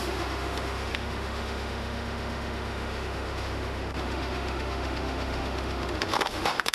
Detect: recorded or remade remade